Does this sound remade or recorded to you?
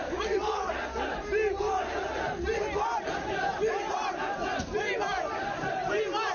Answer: recorded